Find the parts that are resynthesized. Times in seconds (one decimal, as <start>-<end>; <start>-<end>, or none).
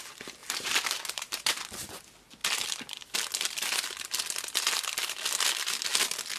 0.4-1.6